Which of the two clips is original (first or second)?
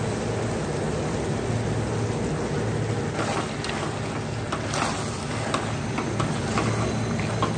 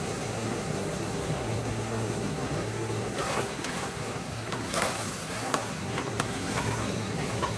first